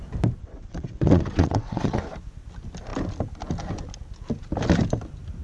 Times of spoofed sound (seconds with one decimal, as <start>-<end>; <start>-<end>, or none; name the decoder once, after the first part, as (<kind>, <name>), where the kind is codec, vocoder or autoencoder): 0.4-2.0 (vocoder, WaveNeXt)